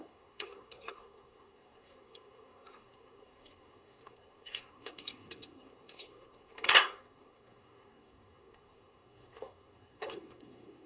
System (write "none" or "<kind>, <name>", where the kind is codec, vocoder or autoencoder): codec, SNAC